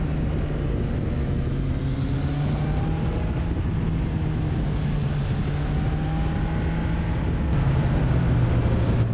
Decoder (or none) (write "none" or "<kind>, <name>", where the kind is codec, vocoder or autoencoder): none